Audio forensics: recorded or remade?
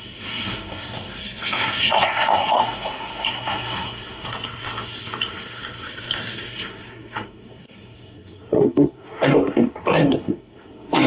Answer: remade